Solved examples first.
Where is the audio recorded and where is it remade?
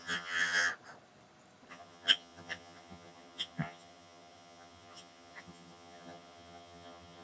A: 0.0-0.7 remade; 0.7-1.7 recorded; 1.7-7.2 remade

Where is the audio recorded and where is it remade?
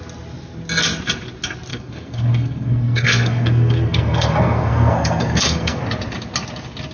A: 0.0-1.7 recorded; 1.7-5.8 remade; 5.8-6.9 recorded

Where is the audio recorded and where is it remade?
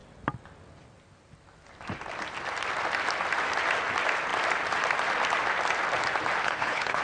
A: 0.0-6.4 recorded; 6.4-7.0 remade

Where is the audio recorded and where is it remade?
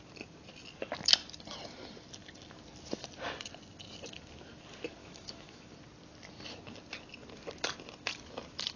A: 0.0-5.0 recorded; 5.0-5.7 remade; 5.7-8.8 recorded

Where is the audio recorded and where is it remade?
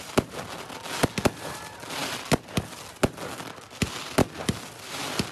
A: 0.0-5.3 recorded